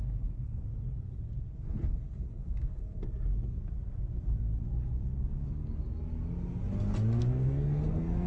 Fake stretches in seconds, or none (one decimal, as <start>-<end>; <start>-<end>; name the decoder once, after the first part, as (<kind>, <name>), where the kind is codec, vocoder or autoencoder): 0.0-0.6 (codec, SNAC); 1.6-3.0; 7.2-8.3